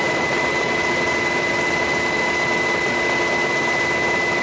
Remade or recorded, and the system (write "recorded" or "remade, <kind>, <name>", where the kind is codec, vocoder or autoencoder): recorded